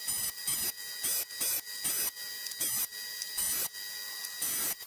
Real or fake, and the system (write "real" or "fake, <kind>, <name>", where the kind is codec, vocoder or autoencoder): real